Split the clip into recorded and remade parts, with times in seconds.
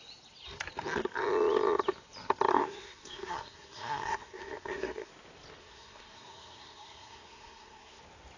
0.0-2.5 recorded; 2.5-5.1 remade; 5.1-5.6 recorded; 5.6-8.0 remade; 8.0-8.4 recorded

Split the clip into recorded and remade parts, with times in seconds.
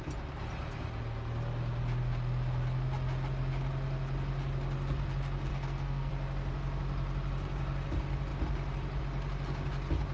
0.0-5.5 recorded; 5.5-6.1 remade; 6.1-10.1 recorded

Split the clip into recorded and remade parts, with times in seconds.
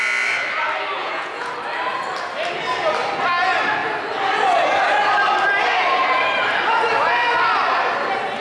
0.0-1.0 recorded; 1.0-1.5 remade; 1.5-8.4 recorded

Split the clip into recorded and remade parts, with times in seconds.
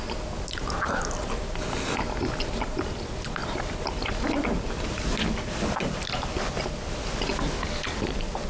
0.0-8.5 recorded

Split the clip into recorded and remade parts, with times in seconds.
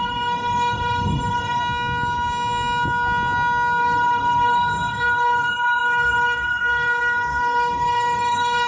0.0-1.6 remade; 1.6-3.8 recorded; 3.8-8.7 remade